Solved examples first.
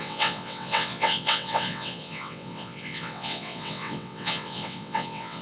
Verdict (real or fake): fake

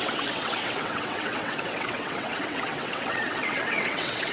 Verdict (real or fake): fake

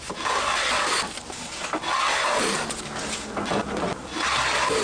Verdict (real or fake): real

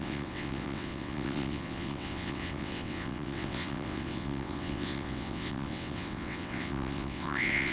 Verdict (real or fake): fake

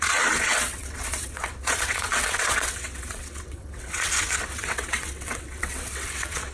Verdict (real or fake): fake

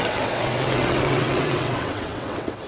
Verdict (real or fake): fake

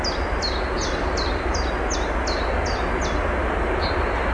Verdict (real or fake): real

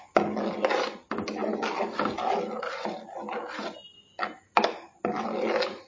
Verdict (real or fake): real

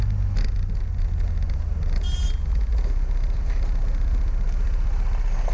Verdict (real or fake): real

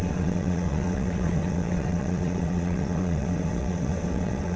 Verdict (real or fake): fake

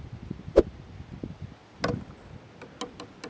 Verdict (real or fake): real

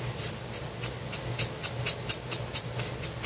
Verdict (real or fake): real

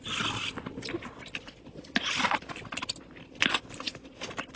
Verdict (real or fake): real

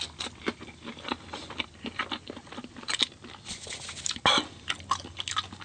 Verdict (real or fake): real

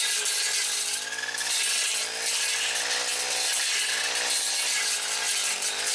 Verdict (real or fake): real